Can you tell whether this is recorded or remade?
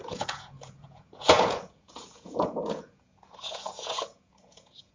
remade